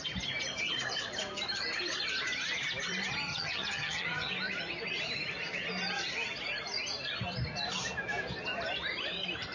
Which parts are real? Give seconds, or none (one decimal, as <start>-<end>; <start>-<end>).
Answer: 0.0-3.3; 4.3-9.5